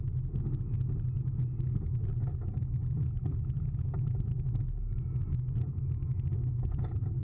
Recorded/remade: recorded